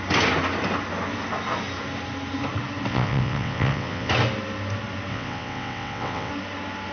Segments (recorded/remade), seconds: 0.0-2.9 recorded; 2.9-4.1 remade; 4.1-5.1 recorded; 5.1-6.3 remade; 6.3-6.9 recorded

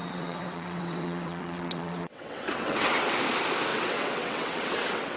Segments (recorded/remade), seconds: 0.0-3.1 remade; 3.1-3.7 recorded; 3.7-5.2 remade

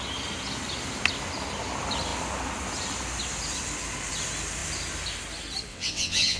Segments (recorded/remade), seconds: 0.0-5.7 recorded; 5.7-6.4 remade

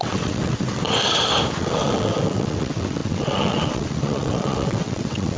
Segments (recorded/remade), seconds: 0.0-0.8 remade; 0.8-1.6 recorded; 1.6-5.4 remade

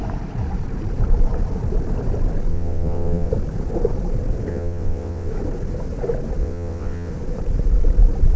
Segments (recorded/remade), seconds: 0.0-2.5 recorded; 2.5-3.3 remade; 3.3-4.5 recorded; 4.5-5.3 remade; 5.3-6.4 recorded; 6.4-7.1 remade; 7.1-8.4 recorded

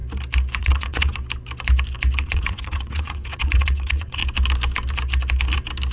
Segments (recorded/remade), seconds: 0.0-0.6 recorded; 0.6-1.1 remade; 1.1-2.2 recorded; 2.2-4.2 remade; 4.2-5.9 recorded